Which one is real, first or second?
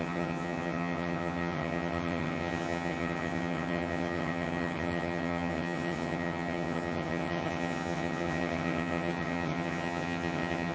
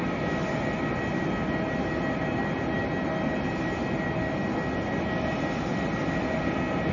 second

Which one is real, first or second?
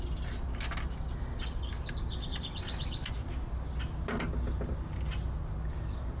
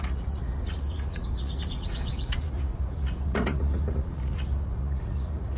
first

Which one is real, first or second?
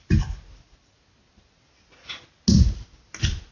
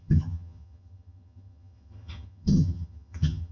first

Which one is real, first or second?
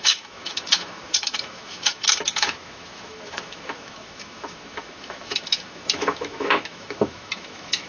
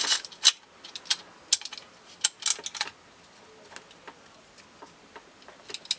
second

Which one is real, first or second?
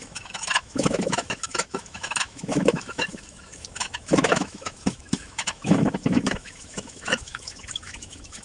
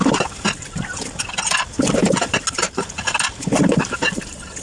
second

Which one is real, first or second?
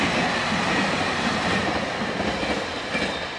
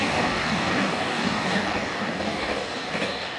first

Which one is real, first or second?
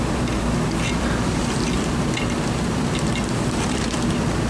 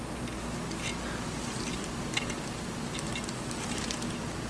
second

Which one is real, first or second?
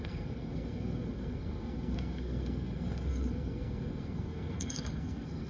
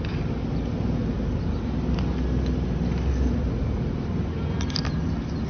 second